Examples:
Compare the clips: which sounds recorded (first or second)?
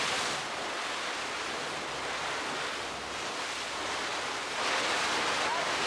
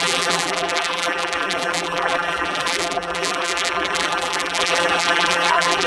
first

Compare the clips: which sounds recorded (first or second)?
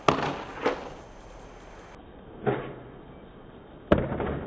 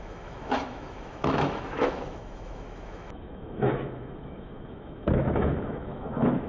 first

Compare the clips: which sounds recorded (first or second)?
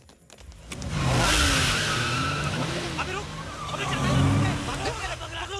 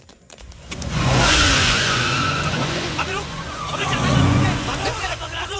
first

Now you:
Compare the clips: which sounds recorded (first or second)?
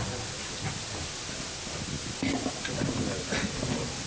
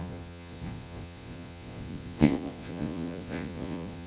first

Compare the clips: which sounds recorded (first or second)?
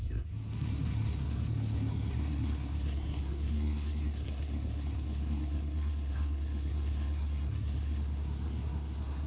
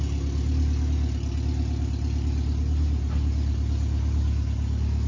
second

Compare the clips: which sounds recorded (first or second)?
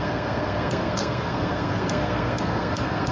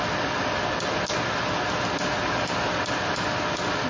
second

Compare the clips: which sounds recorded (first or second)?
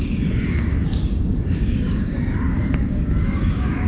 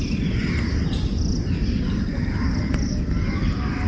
second